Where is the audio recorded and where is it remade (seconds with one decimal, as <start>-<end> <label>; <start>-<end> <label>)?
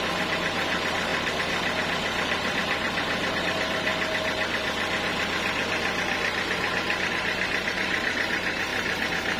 0.0-1.1 remade; 1.1-3.4 recorded; 3.4-3.9 remade; 3.9-7.1 recorded; 7.1-9.4 remade